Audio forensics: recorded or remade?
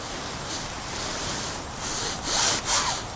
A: recorded